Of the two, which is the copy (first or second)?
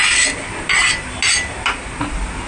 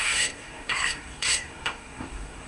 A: second